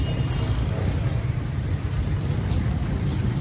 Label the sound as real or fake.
real